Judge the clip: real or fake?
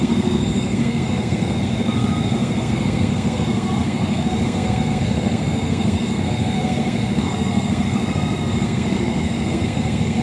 fake